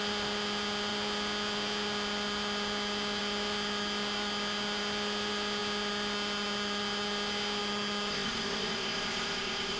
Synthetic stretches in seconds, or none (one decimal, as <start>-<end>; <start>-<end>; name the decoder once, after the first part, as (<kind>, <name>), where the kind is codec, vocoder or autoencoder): 8.1-9.8 (codec, ZipCodec)